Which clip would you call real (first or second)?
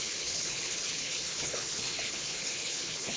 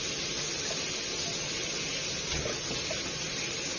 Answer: second